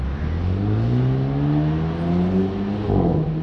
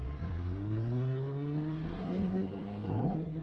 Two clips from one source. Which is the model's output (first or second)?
second